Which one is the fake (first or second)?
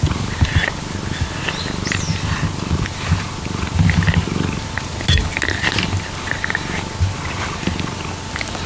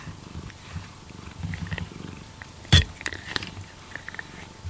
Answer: second